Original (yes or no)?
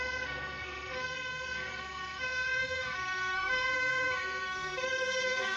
no